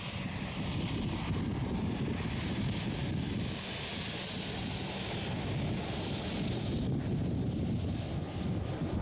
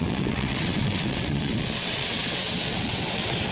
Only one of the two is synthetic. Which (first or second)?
second